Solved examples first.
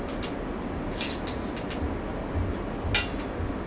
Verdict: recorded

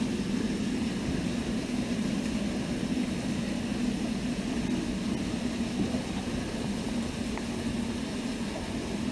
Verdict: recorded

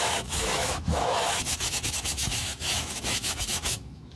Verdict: remade